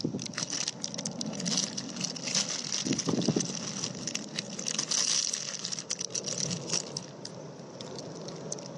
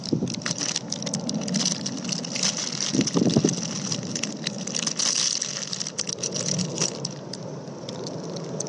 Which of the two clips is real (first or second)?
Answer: first